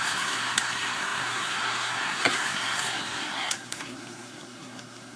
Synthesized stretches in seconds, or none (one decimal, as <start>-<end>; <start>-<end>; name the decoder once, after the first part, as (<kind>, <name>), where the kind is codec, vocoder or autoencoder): 0.0-5.2 (codec, SNAC)